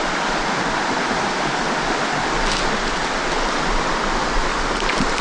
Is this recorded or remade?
recorded